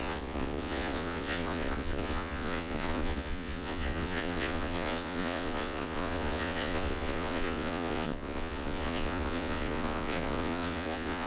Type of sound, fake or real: fake